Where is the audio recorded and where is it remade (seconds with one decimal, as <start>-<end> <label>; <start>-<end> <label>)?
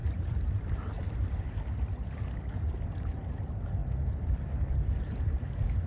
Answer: 0.0-5.9 recorded